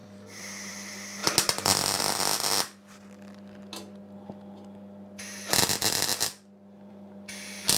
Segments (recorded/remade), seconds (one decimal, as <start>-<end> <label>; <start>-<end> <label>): 0.0-0.7 remade; 0.7-7.8 recorded